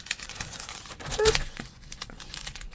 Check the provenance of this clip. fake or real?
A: fake